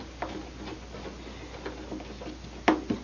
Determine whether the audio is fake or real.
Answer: real